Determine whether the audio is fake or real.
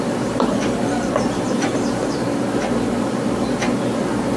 fake